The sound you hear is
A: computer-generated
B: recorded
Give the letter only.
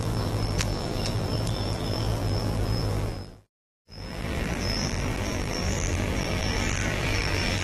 A